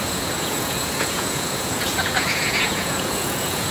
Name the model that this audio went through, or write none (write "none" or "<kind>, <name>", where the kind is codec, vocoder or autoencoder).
vocoder, Vocos